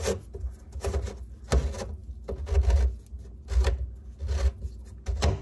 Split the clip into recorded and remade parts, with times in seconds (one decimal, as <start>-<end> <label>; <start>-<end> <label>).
0.0-5.4 recorded